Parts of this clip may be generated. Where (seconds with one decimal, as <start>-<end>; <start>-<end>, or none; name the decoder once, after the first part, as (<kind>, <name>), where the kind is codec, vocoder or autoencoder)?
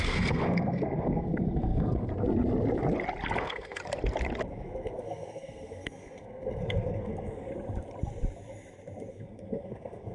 0.0-2.1 (codec, SNAC); 3.4-3.8; 4.5-7.5; 9.1-10.1